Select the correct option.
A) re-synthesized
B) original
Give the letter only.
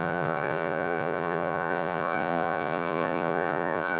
A